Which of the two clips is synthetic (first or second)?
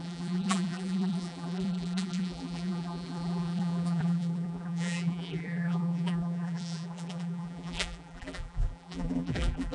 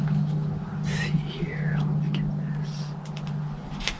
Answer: first